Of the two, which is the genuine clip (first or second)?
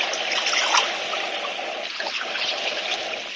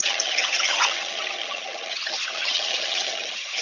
first